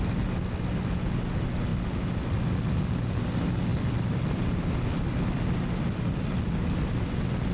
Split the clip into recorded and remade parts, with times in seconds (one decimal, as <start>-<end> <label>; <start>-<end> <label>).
0.0-3.7 recorded; 3.7-5.4 remade; 5.4-7.5 recorded